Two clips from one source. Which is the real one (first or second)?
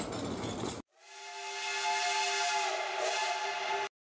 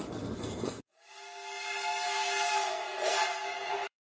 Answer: first